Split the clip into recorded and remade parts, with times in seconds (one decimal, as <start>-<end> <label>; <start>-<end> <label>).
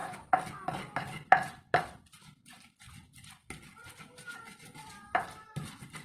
0.0-0.8 recorded; 0.8-6.0 remade